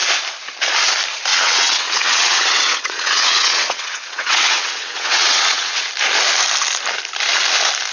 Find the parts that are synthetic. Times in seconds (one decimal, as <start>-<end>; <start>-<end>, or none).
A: 1.3-5.9